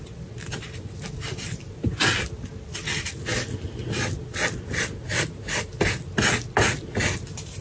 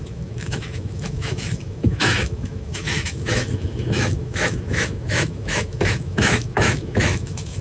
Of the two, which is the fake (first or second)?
second